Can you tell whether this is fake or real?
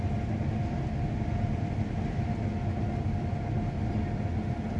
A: real